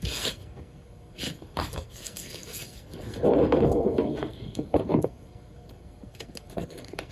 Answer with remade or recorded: remade